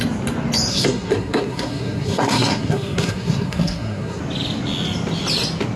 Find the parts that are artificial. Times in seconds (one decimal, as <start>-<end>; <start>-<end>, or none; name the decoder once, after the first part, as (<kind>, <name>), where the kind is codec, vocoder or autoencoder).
0.7-4.2 (codec, SNAC)